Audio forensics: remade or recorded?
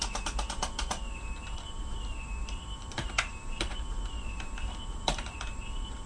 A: remade